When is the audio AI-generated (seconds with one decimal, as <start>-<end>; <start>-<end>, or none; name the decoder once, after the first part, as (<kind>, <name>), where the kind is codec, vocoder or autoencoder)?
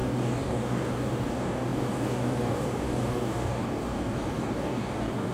0.0-5.3 (codec, DAC)